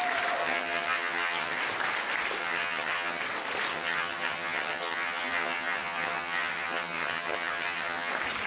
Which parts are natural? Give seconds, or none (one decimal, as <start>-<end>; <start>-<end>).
0.0-0.4; 1.6-2.4; 3.2-3.7; 8.1-8.5